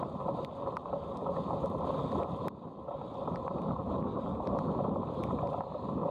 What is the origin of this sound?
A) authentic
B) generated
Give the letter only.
A